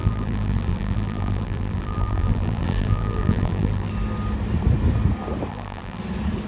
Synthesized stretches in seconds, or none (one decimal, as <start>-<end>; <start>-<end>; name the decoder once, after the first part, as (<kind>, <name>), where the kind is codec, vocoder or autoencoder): 0.0-3.9 (vocoder, BigVGAN v2); 5.5-6.0